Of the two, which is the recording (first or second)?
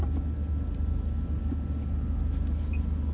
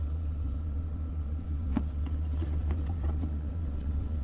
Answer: first